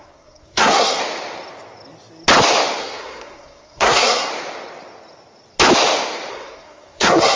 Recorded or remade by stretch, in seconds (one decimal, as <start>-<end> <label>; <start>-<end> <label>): 0.0-1.0 remade; 1.0-2.8 recorded; 2.8-4.3 remade; 4.3-6.3 recorded; 6.3-7.4 remade